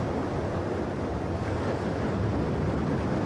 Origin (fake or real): real